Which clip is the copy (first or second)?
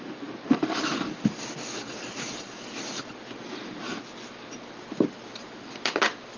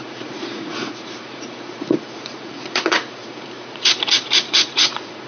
second